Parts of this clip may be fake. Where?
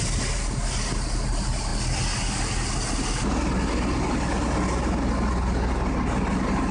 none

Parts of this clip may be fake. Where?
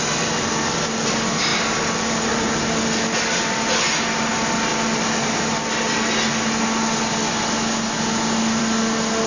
none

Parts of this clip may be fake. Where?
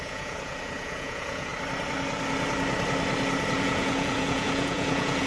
0.0-1.5 (vocoder, Vocos); 3.6-5.3